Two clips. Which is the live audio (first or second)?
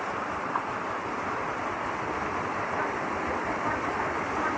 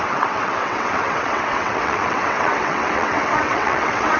first